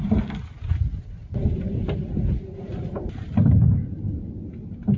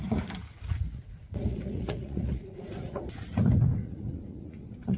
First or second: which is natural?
first